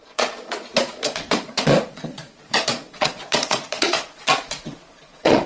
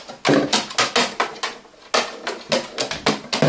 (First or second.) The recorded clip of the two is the second